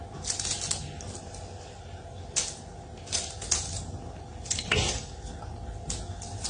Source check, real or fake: real